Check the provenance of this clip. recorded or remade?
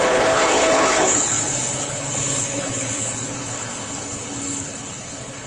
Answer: remade